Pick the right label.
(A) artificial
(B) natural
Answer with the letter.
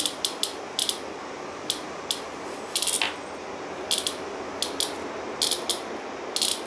B